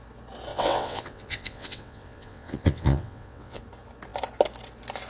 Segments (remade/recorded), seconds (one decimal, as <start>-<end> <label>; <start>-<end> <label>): 0.0-0.5 recorded; 0.5-3.6 remade; 3.6-5.1 recorded